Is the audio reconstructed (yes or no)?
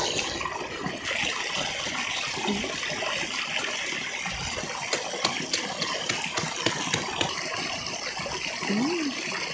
no